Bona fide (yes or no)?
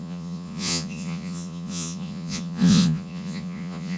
no